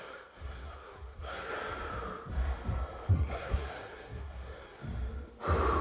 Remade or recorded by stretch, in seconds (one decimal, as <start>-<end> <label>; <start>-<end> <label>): 0.0-1.5 remade; 1.5-3.1 recorded; 3.1-4.8 remade; 4.8-5.8 recorded